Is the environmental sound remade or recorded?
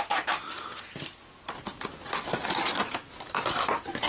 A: recorded